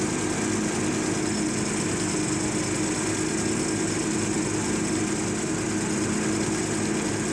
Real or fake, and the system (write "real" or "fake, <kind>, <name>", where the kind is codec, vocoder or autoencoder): real